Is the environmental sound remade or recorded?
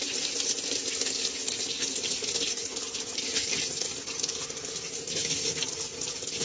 recorded